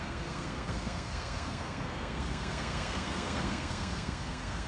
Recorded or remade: remade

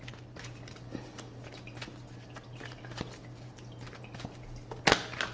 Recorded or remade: recorded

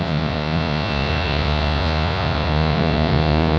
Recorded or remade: remade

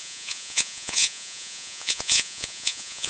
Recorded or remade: remade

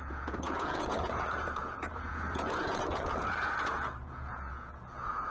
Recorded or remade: remade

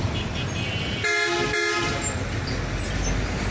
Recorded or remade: recorded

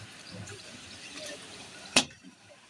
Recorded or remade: remade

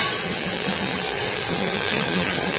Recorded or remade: remade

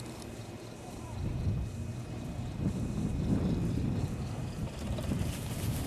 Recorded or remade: remade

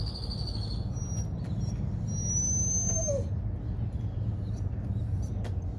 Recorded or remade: recorded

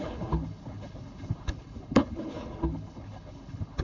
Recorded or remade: remade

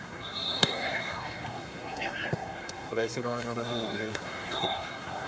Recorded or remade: remade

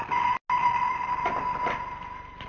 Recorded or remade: recorded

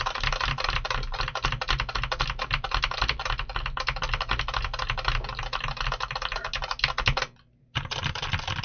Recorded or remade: recorded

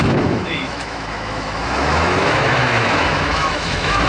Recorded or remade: remade